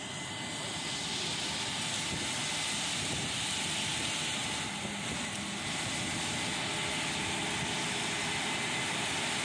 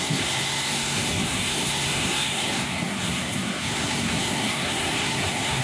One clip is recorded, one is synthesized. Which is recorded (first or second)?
first